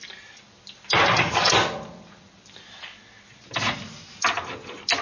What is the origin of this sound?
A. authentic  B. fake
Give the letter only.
A